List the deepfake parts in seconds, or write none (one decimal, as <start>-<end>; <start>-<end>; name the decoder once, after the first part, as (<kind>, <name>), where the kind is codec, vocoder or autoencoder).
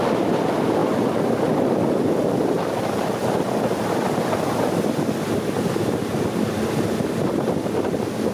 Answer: 0.8-5.7 (vocoder, BigVGAN v2)